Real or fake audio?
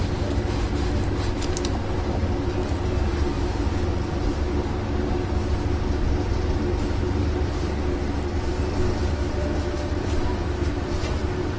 real